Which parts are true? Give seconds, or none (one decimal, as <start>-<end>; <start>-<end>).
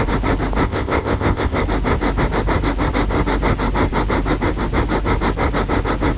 0.0-0.6; 1.6-6.2